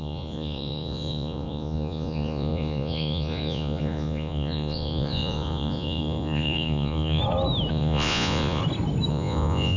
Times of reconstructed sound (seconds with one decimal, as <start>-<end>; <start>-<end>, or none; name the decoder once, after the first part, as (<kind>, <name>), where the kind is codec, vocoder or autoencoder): 0.0-7.2 (vocoder, Vocos); 7.7-8.6; 9.1-9.8